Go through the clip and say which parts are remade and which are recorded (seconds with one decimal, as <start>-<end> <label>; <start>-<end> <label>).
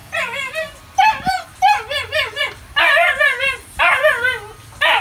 0.0-5.0 recorded